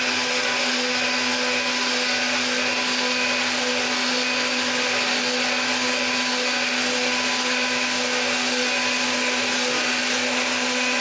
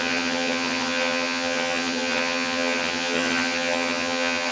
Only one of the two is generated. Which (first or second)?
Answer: second